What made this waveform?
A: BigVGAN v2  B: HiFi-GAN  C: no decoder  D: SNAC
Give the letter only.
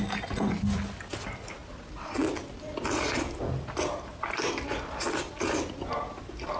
C